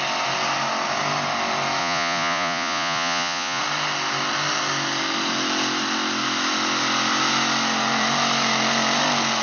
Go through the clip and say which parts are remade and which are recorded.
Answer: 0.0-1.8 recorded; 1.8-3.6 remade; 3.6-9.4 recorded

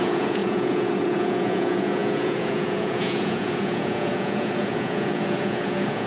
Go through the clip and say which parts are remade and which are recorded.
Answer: 0.0-6.1 remade

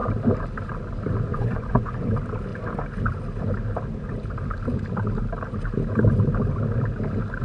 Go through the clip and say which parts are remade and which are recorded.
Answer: 0.0-1.3 recorded; 1.3-2.1 remade; 2.1-7.4 recorded

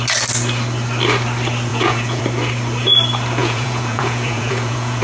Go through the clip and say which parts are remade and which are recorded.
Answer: 0.0-1.7 recorded; 1.7-2.2 remade; 2.2-3.4 recorded; 3.4-5.0 remade

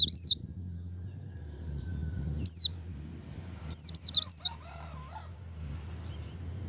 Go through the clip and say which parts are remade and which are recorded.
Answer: 0.0-6.7 recorded

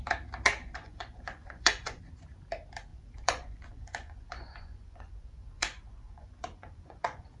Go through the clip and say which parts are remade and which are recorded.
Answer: 0.0-0.6 recorded; 0.6-2.0 remade; 2.0-2.9 recorded; 2.9-7.4 remade